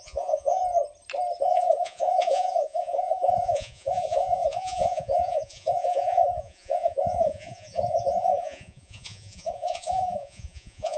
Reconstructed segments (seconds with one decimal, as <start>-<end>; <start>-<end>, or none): 0.0-0.6; 1.4-11.0